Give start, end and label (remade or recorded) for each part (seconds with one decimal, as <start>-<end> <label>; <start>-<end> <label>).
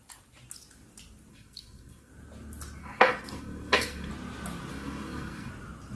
0.0-1.3 recorded; 1.3-2.1 remade; 2.1-2.8 recorded; 2.8-4.1 remade; 4.1-4.7 recorded; 4.7-5.5 remade; 5.5-6.0 recorded